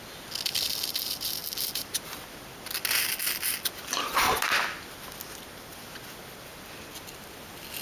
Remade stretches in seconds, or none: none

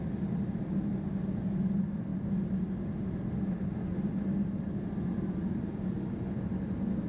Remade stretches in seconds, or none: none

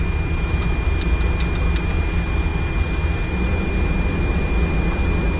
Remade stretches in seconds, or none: none